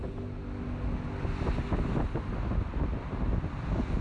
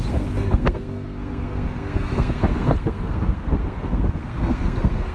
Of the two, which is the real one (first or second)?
first